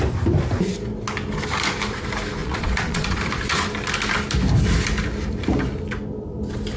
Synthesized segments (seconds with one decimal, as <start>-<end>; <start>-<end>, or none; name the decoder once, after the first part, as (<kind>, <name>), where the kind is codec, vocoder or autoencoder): 2.4-3.2 (vocoder, Vocos)